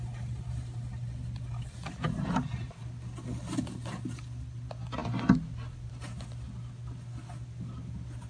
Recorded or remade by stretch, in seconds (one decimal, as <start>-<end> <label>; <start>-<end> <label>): 0.0-8.3 recorded